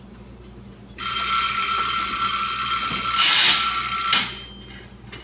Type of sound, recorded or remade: recorded